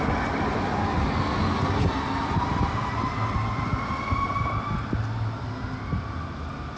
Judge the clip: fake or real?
real